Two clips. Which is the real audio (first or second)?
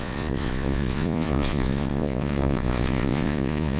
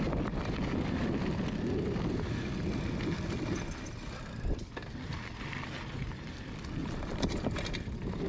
second